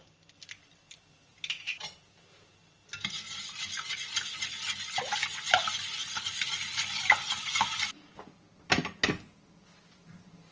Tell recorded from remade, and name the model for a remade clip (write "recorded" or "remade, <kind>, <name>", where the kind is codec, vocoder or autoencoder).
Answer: recorded